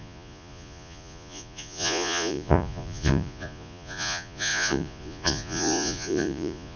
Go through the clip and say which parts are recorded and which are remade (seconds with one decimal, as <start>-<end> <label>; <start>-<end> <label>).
0.0-6.8 remade